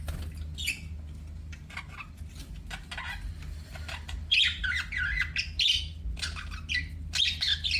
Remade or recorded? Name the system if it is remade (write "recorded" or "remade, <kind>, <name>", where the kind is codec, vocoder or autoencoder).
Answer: recorded